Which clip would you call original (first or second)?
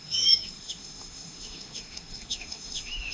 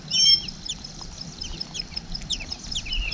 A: second